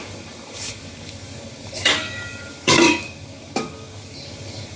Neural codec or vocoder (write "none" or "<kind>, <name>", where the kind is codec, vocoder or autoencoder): codec, DAC